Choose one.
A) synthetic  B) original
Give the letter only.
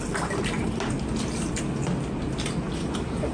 B